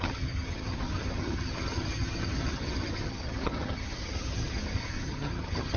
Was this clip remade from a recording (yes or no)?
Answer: yes